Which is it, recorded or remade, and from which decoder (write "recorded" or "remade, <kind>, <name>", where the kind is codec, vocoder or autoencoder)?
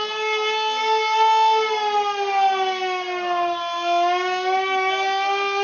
recorded